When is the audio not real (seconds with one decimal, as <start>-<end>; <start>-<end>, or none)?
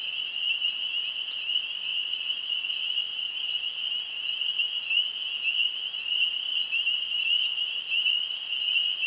1.9-3.5